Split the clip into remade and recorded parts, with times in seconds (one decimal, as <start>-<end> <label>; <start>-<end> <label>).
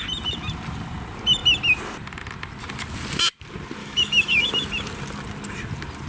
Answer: 0.0-3.8 recorded; 3.8-4.5 remade; 4.5-6.1 recorded